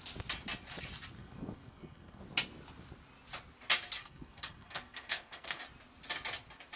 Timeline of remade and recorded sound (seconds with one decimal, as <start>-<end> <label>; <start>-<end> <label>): 0.0-1.2 recorded; 1.2-2.2 remade; 2.2-4.0 recorded; 4.0-5.6 remade; 5.6-6.8 recorded